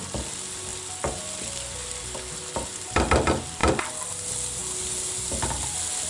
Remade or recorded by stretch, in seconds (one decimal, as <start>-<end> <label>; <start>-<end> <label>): 0.0-6.1 recorded